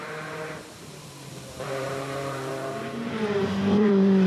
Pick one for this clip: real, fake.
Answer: fake